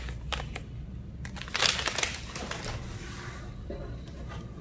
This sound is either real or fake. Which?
real